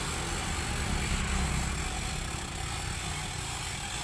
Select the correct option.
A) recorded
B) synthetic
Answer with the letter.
A